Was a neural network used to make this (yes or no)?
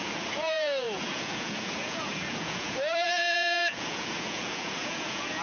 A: yes